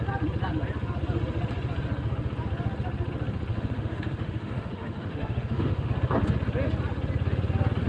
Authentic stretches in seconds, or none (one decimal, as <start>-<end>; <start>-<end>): 0.0-3.5; 5.9-7.9